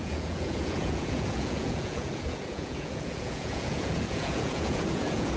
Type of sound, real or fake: fake